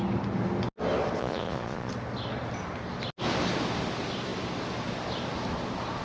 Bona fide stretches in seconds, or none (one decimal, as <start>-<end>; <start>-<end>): 0.0-1.2; 1.9-6.0